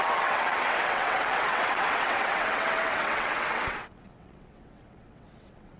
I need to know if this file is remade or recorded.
remade